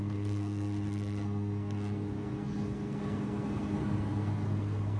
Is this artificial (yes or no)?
yes